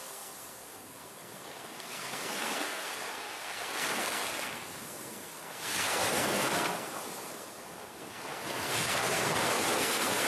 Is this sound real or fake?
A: fake